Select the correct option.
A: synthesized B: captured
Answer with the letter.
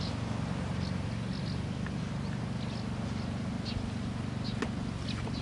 B